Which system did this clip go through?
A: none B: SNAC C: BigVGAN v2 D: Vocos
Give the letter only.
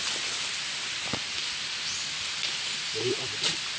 C